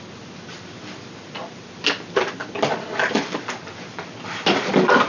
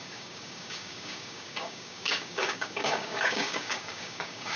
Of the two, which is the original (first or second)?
first